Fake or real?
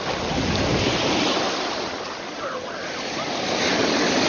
real